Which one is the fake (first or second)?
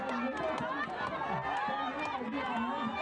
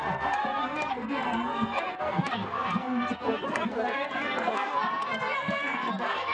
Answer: second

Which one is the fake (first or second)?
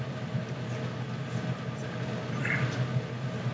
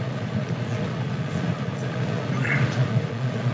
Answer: second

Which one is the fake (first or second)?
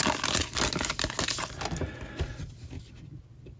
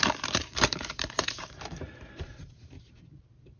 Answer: second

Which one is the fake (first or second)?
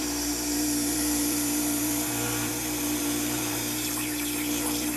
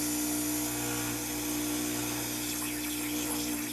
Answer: first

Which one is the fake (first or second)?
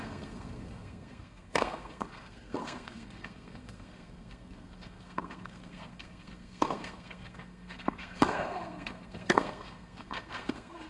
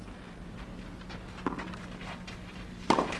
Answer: first